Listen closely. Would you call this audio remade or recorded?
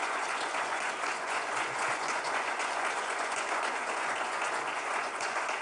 remade